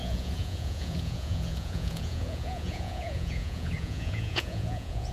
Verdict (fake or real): fake